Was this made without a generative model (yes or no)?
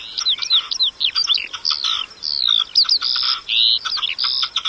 yes